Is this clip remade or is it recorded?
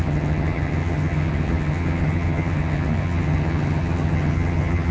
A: remade